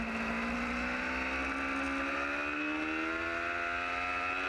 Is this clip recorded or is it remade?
recorded